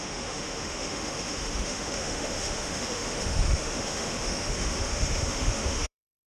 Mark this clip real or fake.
fake